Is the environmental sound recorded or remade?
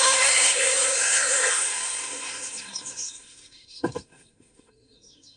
remade